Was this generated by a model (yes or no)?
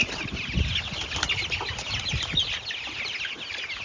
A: no